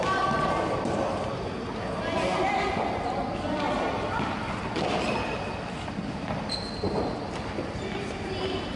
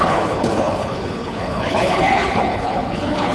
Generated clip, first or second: second